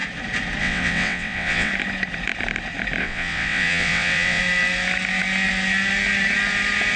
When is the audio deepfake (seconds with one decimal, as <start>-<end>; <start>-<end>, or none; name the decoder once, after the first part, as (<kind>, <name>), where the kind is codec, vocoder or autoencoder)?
0.6-1.7 (vocoder, WaveNeXt); 3.0-4.4